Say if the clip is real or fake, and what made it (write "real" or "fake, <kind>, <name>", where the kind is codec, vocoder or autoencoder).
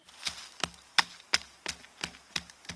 real